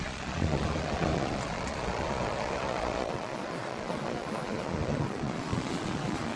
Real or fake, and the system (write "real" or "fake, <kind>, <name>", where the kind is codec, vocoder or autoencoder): fake, vocoder, Vocos